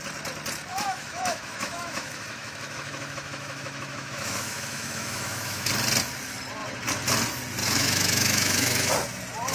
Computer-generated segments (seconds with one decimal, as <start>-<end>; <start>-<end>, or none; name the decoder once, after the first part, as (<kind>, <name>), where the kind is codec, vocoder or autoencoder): 0.7-5.7 (autoencoder, DAC-VAE); 7.6-8.9